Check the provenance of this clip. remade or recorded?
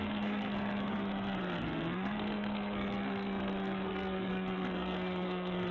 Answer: remade